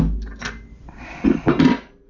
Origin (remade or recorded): recorded